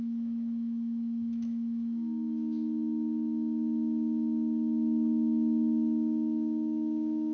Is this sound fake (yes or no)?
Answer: yes